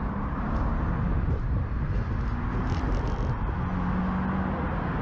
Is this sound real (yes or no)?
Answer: yes